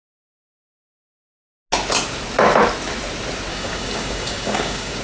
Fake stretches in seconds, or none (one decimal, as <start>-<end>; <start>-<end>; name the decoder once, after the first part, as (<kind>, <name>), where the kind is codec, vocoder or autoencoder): 3.5-5.0 (codec, DAC)